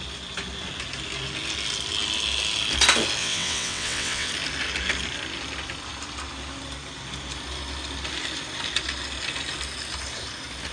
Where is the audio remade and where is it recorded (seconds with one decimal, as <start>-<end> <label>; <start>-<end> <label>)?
0.0-3.2 recorded; 3.2-4.3 remade; 4.3-10.7 recorded